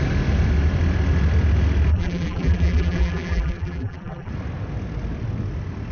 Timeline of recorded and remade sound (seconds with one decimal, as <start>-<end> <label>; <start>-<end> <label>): 0.0-1.9 recorded; 1.9-4.3 remade; 4.3-5.9 recorded